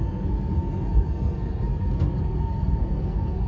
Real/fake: fake